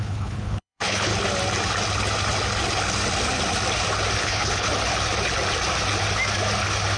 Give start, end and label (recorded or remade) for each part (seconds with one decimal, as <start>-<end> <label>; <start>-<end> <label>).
0.0-1.1 remade; 1.1-4.2 recorded; 4.2-4.7 remade; 4.7-7.0 recorded